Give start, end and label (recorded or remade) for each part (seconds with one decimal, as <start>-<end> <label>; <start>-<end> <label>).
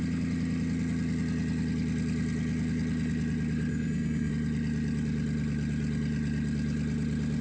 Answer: 0.0-3.7 recorded; 3.7-4.3 remade; 4.3-7.4 recorded